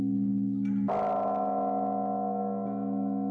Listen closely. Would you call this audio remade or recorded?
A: recorded